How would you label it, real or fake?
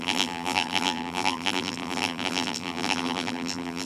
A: fake